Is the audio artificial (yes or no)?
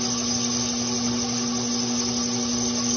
no